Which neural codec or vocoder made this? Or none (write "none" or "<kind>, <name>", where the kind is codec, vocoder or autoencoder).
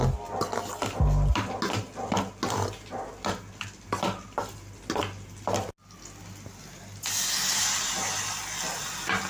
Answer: none